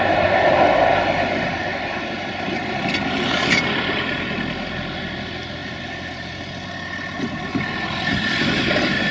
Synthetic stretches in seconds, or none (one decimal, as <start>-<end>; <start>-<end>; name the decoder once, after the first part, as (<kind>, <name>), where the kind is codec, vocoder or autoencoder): none